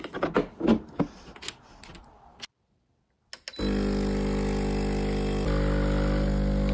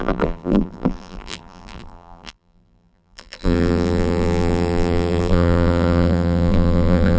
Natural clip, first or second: first